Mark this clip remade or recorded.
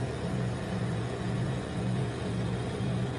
remade